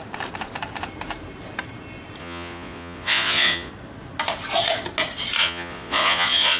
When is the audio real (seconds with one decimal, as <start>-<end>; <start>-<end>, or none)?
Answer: 0.0-2.2; 3.7-5.4